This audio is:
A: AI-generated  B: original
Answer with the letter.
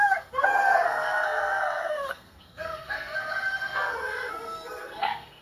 A